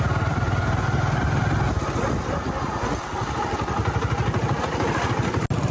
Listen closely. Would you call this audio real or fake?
real